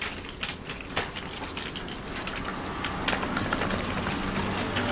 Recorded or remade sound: recorded